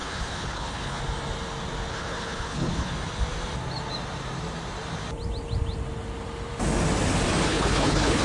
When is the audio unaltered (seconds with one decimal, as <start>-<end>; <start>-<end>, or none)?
1.0-1.9; 2.9-7.5